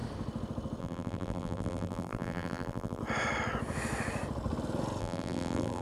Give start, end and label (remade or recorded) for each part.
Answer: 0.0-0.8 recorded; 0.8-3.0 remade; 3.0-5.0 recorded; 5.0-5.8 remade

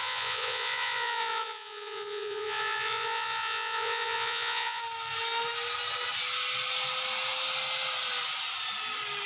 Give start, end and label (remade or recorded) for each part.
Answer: 0.0-4.8 remade; 4.8-9.3 recorded